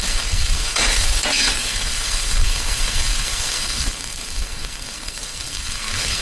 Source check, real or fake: fake